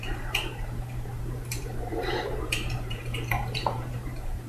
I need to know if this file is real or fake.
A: fake